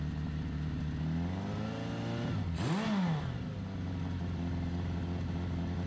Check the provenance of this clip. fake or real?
real